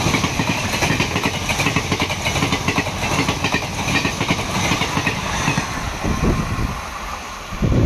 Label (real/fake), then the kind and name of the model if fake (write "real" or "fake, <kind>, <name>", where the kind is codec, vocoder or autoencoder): real